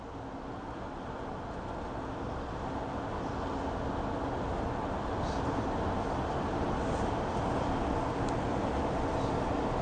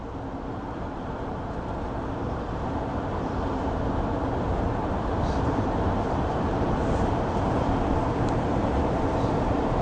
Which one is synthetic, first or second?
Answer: second